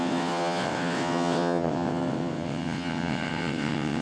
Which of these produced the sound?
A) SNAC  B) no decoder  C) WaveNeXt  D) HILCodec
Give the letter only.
C